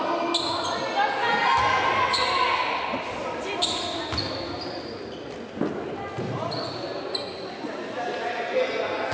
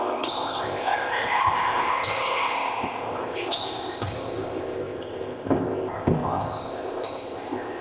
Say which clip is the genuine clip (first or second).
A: first